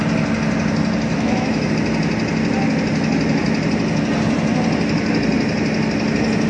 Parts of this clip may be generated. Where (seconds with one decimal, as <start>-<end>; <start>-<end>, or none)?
1.1-1.7